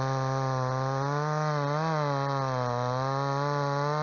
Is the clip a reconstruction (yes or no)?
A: no